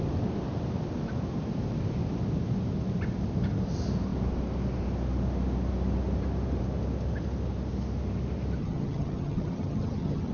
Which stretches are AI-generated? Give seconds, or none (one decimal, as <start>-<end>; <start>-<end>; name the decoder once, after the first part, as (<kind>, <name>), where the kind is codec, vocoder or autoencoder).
8.6-10.3 (vocoder, HiFi-GAN)